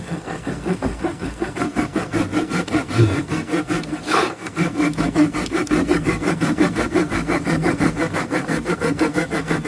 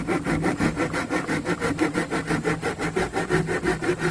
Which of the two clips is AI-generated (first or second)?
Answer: first